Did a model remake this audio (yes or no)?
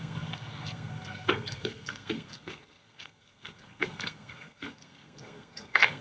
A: yes